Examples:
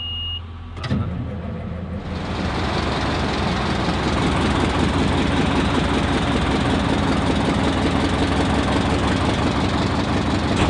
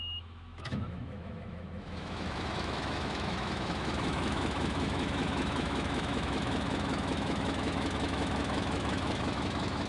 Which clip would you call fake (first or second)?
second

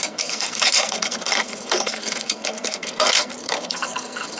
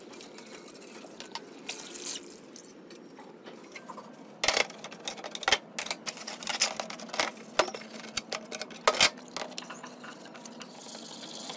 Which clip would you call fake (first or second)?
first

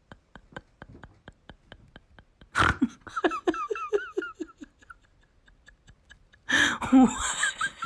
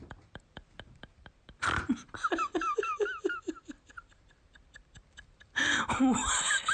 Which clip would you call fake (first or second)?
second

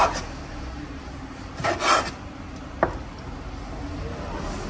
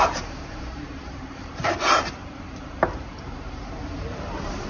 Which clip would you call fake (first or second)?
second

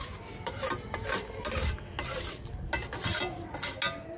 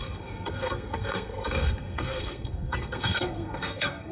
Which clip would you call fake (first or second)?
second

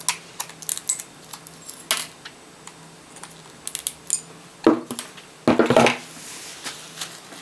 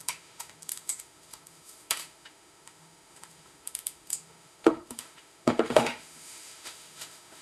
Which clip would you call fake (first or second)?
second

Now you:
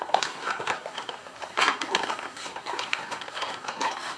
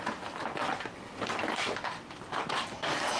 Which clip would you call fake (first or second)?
first